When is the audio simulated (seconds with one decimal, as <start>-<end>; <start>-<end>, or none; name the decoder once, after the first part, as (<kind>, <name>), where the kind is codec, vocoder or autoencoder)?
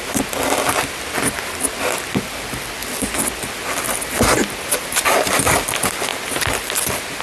none